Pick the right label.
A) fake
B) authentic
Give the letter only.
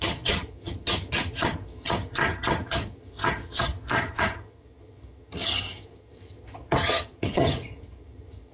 A